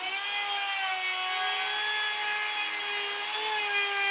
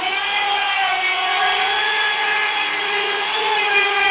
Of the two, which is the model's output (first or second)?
second